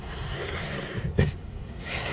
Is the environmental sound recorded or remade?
remade